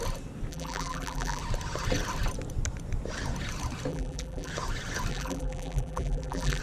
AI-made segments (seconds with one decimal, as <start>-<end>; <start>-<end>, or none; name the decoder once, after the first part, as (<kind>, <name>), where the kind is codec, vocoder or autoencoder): 0.5-1.4 (vocoder, BigVGAN v2); 3.9-4.5; 5.1-6.6